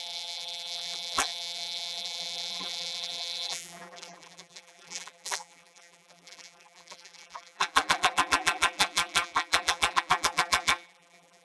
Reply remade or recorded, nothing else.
remade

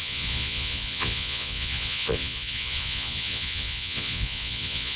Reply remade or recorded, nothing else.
remade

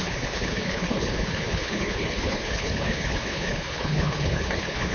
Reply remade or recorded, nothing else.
remade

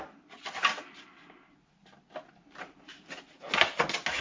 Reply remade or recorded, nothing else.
recorded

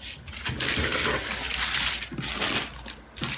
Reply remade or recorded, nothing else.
recorded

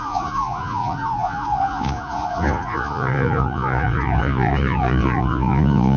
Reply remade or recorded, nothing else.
remade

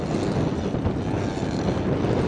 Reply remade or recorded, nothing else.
recorded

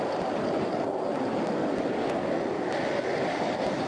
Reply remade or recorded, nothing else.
recorded